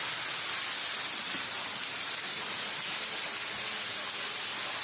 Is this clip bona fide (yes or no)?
yes